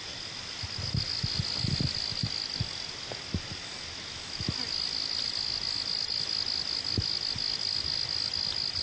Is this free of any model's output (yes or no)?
yes